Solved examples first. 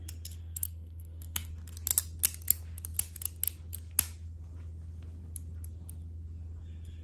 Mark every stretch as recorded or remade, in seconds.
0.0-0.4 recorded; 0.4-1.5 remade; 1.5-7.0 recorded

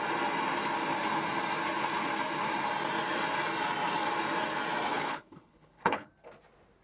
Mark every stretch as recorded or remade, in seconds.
0.0-4.9 recorded; 4.9-6.1 remade; 6.1-6.8 recorded

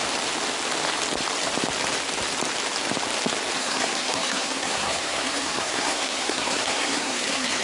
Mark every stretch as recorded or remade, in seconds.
0.0-3.6 recorded; 3.6-7.6 remade

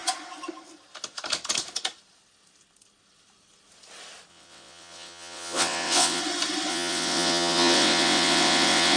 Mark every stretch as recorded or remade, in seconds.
0.0-4.3 recorded; 4.3-6.2 remade; 6.2-6.7 recorded; 6.7-9.0 remade

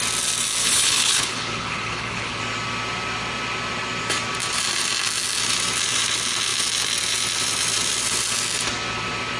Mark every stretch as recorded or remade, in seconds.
0.0-0.6 recorded; 0.6-2.4 remade; 2.4-9.4 recorded

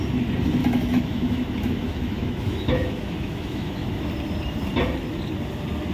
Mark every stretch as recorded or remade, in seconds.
0.0-0.6 recorded; 0.6-4.1 remade; 4.1-5.9 recorded

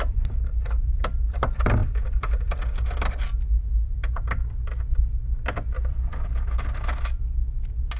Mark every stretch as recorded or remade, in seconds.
0.0-8.0 recorded